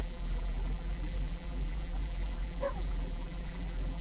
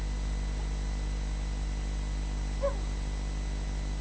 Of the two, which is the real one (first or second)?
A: second